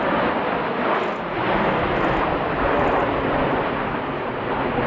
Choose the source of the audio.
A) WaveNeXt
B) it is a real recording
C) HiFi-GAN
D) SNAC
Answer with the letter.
B